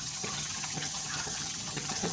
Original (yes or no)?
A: no